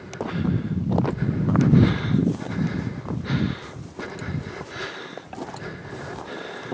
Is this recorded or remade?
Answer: recorded